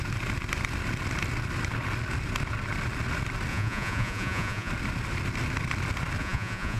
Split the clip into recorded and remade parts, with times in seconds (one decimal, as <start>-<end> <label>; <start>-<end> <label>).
0.0-3.5 recorded; 3.5-4.7 remade; 4.7-6.2 recorded; 6.2-6.8 remade

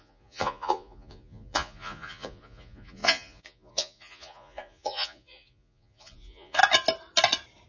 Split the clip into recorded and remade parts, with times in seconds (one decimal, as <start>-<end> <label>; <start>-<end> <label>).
0.0-6.6 remade; 6.6-7.7 recorded

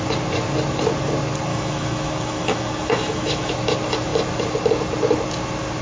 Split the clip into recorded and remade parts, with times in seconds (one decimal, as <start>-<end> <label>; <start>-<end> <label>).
0.0-1.5 recorded; 1.5-3.5 remade; 3.5-5.8 recorded

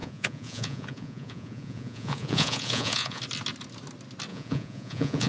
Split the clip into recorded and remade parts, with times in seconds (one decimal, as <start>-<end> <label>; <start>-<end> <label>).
0.0-3.2 remade; 3.2-4.3 recorded; 4.3-5.3 remade

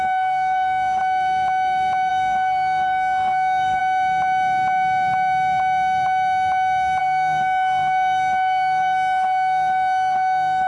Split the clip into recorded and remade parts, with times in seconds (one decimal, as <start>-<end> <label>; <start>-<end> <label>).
0.0-1.0 remade; 1.0-2.1 recorded; 2.1-3.8 remade; 3.8-7.0 recorded; 7.0-10.7 remade

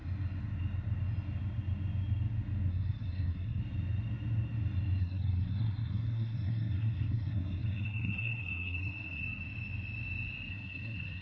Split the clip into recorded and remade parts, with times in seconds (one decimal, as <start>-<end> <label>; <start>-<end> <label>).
0.0-2.7 recorded; 2.7-3.6 remade; 3.6-5.0 recorded; 5.0-9.2 remade; 9.2-10.5 recorded; 10.5-11.2 remade